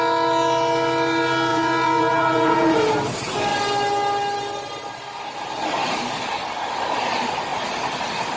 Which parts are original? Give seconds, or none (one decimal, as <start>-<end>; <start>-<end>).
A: 0.0-1.5; 2.9-8.4

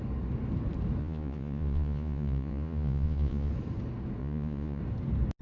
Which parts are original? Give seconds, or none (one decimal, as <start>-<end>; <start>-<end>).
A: 0.0-1.0; 3.5-4.2; 4.8-5.4

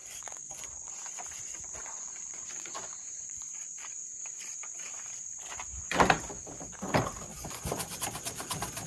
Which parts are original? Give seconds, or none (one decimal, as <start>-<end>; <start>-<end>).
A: 3.5-7.3; 8.0-8.9

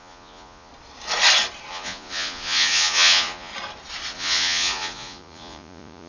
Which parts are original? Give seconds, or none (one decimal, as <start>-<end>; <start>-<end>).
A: 0.7-1.7; 3.5-4.1

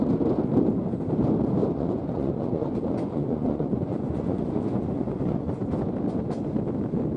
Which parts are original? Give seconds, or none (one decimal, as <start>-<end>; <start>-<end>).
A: 0.0-1.6; 5.5-7.2